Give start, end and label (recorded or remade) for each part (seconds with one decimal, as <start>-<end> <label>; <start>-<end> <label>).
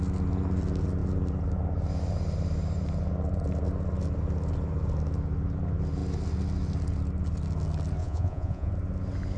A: 0.0-8.0 recorded; 8.0-8.7 remade; 8.7-9.4 recorded